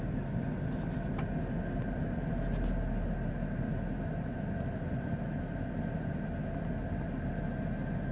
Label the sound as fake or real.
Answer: real